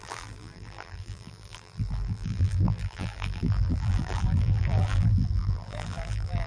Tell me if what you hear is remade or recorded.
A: remade